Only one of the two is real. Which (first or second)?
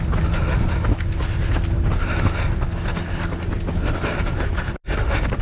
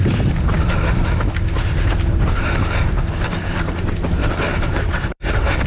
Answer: first